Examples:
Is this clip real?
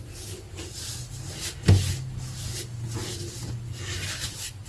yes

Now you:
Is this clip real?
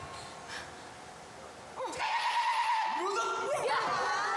yes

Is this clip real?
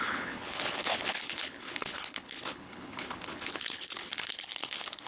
no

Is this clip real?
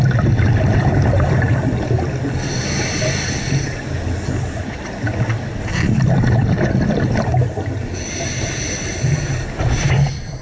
yes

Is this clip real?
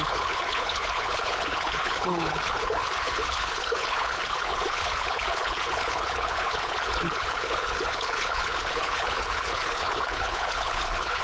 no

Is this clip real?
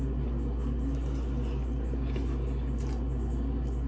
yes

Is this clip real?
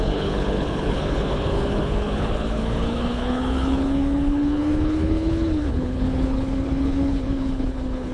no